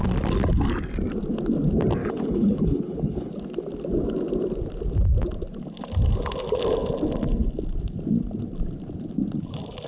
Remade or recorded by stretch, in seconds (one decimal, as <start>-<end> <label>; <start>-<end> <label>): 0.0-2.0 recorded; 2.0-3.3 remade; 3.3-9.9 recorded